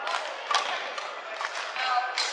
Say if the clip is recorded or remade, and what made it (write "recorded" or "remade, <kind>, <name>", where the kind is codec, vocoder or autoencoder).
recorded